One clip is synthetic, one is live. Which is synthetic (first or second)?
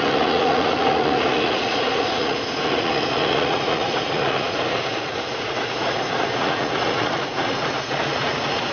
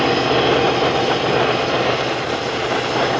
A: first